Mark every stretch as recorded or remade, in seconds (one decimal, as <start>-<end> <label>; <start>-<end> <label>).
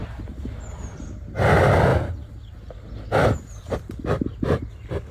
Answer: 0.0-1.5 remade; 1.5-5.1 recorded